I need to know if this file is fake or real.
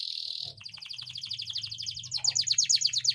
real